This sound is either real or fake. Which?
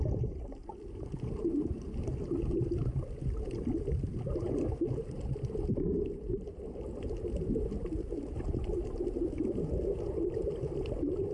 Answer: real